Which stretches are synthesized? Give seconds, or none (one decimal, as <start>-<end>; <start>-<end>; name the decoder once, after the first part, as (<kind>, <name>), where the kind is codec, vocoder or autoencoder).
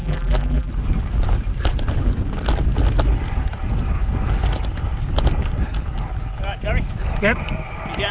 0.0-0.7 (vocoder, BigVGAN v2)